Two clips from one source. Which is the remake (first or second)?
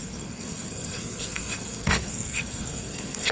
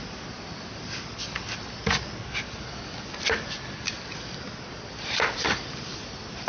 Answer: first